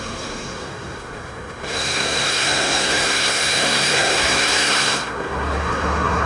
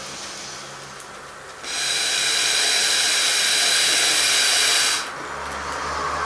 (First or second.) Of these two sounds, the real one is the second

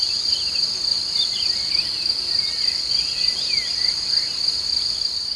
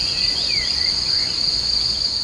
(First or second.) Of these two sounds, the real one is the first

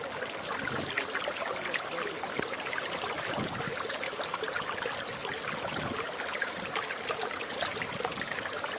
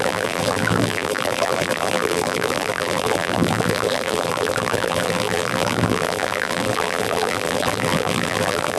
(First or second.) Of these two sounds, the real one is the first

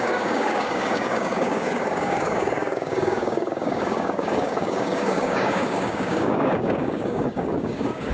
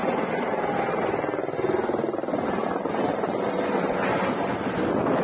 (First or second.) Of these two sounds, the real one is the second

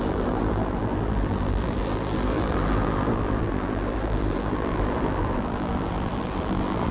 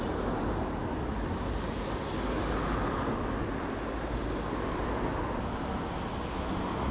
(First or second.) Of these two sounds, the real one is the second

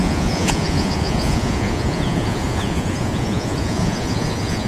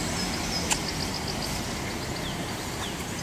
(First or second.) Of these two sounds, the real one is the second